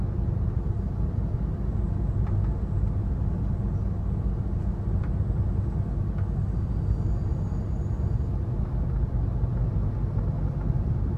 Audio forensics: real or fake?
real